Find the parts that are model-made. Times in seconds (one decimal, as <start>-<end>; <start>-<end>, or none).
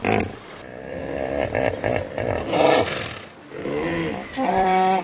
0.0-1.0; 4.0-5.0